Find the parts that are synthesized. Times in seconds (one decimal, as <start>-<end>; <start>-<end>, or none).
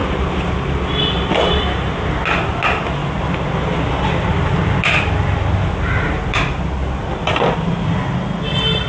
none